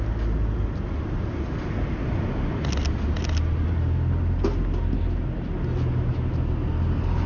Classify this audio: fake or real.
real